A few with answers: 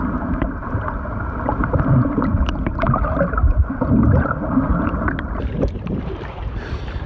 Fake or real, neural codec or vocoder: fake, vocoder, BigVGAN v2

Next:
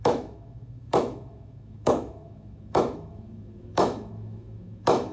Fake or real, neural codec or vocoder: fake, autoencoder, DAC-VAE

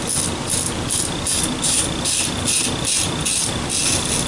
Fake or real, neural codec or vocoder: real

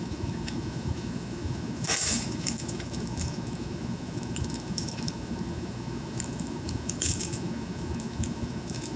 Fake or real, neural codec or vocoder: fake, autoencoder, DAC-VAE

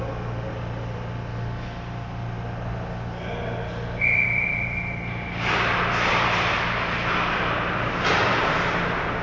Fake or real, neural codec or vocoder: real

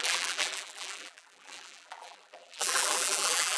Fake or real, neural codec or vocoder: fake, vocoder, BigVGAN v2